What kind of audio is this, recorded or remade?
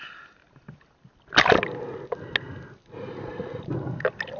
recorded